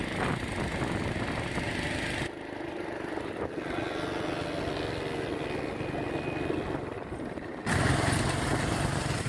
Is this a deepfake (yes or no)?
no